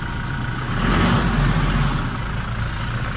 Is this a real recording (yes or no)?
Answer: yes